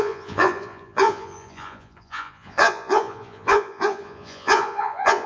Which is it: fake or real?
fake